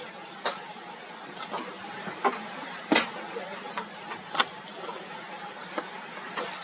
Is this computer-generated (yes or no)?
no